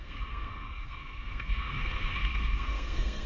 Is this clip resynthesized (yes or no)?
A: yes